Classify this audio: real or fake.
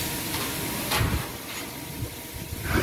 fake